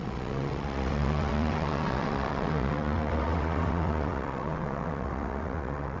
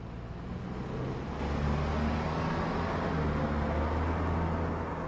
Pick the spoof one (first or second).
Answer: first